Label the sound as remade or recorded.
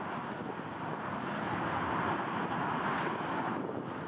recorded